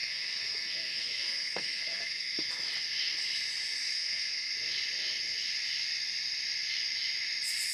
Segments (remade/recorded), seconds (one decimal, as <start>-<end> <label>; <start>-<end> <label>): 0.0-2.5 remade; 2.5-3.9 recorded; 3.9-4.5 remade; 4.5-7.7 recorded